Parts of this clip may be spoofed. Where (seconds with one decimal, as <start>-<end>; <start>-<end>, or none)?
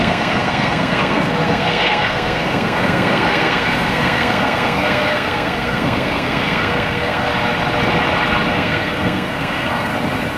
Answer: 0.0-7.3; 8.5-9.9